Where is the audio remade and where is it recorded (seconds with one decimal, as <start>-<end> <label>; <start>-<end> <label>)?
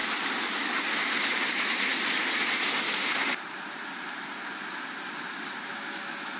0.0-1.5 recorded; 1.5-1.9 remade; 1.9-5.7 recorded; 5.7-6.4 remade